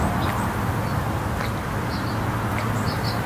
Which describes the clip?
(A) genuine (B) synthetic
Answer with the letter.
A